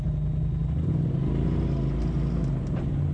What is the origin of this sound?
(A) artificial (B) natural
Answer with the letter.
B